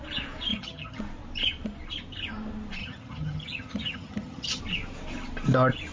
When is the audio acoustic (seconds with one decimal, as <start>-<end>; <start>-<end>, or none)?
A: 0.0-0.5; 1.0-2.8; 4.6-5.9